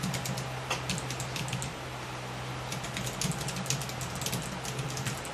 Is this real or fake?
real